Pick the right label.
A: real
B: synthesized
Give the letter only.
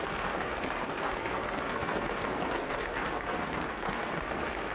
B